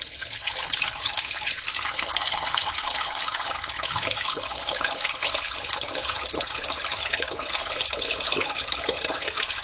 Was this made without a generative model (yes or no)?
no